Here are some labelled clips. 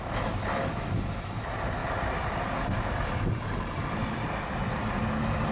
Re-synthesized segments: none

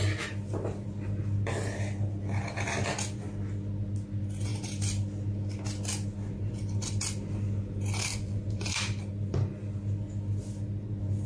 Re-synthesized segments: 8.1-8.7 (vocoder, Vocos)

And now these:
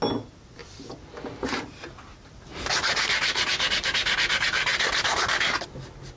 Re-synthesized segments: none